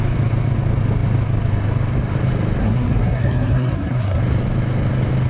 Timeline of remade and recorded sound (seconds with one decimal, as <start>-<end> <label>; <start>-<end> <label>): 0.0-2.6 recorded; 2.6-4.2 remade; 4.2-5.3 recorded